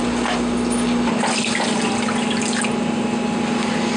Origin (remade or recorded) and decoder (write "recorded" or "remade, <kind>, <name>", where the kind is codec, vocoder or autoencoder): recorded